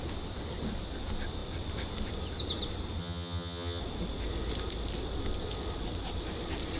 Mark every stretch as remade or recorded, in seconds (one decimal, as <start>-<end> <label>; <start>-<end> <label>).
0.0-3.0 recorded; 3.0-3.8 remade; 3.8-6.8 recorded